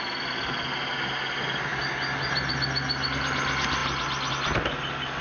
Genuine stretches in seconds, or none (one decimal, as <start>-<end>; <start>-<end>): 0.0-5.2